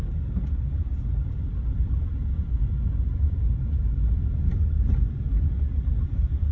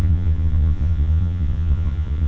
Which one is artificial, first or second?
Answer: second